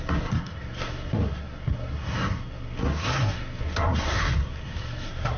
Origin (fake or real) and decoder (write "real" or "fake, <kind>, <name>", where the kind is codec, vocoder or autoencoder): fake, codec, SNAC